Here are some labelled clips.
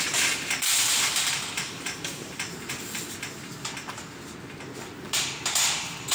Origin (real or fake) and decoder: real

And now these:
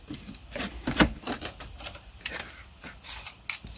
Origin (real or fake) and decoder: real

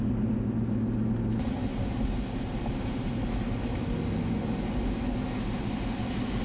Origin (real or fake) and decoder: real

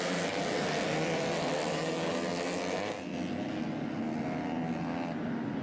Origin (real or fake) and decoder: real